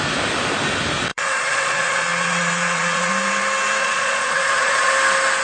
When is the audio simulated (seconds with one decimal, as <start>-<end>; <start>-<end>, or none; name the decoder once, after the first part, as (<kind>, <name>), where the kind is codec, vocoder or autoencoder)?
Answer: 1.1-3.1 (vocoder, Vocos); 3.8-4.9